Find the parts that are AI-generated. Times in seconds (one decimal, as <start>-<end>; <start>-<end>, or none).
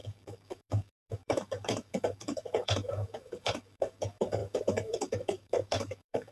0.0-6.3